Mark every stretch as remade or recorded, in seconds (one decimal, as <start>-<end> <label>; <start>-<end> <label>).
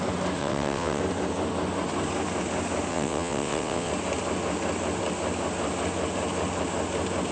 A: 0.0-0.4 recorded; 0.4-1.0 remade; 1.0-2.9 recorded; 2.9-3.9 remade; 3.9-7.3 recorded